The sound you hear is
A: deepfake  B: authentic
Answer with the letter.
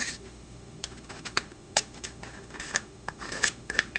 A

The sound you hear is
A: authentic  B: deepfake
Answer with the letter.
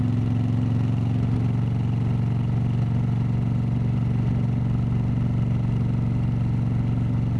A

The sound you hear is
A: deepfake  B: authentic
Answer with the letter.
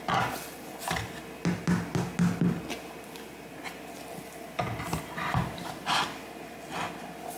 B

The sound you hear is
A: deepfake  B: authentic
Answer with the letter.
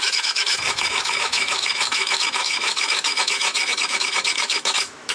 A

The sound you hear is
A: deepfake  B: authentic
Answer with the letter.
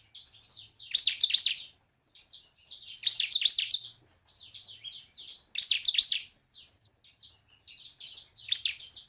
B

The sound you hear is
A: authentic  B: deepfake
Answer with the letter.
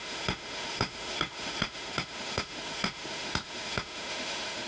B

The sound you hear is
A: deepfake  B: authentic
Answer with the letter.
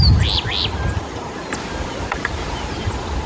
B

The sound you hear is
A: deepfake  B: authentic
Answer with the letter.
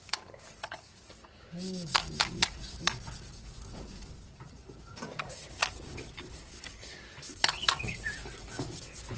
A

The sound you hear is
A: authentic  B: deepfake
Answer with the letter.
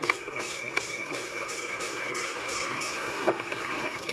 B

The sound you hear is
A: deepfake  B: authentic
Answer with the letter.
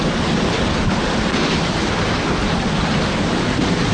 B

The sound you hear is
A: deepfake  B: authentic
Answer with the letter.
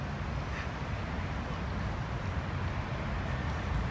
B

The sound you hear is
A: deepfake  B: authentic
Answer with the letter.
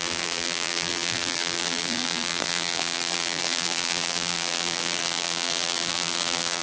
A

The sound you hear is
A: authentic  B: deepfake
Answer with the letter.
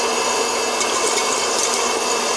A